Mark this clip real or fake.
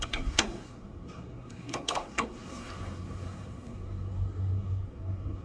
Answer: fake